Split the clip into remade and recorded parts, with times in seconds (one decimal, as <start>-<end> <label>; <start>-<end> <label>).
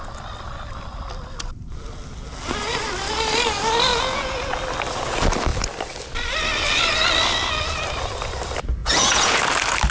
0.0-3.9 recorded; 3.9-4.6 remade; 4.6-8.8 recorded; 8.8-9.4 remade; 9.4-9.9 recorded